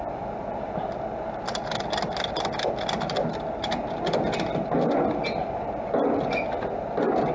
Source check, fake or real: real